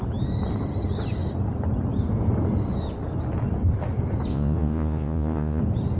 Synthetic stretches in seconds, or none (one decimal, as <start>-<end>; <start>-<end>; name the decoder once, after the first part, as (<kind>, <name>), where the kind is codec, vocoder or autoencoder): 4.3-5.6 (vocoder, Vocos)